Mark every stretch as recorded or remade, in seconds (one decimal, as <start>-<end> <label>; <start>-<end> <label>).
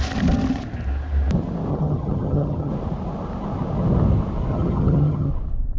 0.0-1.7 recorded; 1.7-2.7 remade; 2.7-4.5 recorded; 4.5-5.3 remade; 5.3-5.8 recorded